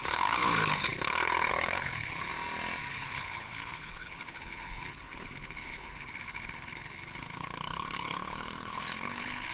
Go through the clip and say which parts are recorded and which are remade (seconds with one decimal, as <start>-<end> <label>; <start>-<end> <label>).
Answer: 0.0-2.3 remade; 2.3-2.9 recorded; 2.9-9.5 remade